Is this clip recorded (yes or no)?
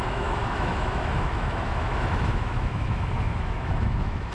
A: no